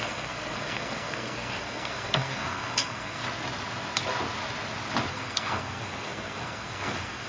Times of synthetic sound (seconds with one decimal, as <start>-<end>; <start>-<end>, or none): 0.0-3.2; 5.1-7.3